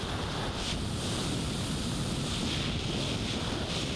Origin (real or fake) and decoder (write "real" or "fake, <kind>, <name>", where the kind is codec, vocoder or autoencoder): real